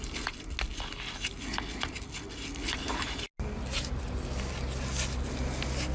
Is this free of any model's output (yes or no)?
yes